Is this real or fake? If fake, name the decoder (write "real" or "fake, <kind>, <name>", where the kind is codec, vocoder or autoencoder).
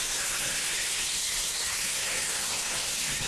fake, codec, SNAC